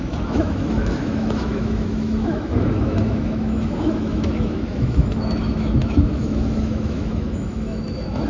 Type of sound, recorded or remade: remade